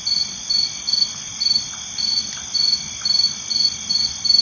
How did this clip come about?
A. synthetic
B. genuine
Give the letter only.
B